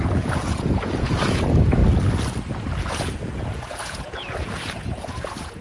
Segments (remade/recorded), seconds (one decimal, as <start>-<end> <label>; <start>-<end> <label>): 0.0-1.8 remade; 1.8-2.9 recorded; 2.9-5.6 remade